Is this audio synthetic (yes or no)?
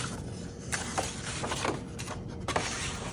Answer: no